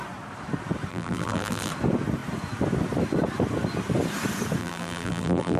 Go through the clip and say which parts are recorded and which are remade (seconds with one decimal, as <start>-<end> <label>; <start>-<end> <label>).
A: 0.0-0.9 recorded; 0.9-1.7 remade; 1.7-4.6 recorded; 4.6-5.6 remade